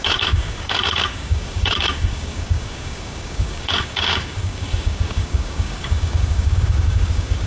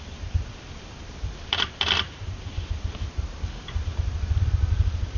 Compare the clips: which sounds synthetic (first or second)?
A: first